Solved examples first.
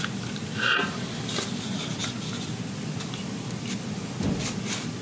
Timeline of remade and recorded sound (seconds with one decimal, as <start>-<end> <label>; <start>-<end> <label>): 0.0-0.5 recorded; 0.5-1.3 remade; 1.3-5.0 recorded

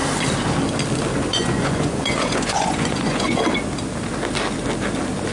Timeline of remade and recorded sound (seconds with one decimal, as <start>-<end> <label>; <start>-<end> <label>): 0.0-1.3 recorded; 1.3-3.4 remade; 3.4-5.3 recorded

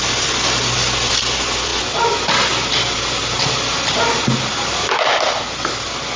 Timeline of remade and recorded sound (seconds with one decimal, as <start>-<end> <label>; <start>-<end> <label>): 0.0-6.2 recorded